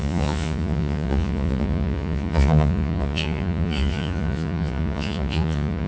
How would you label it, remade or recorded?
remade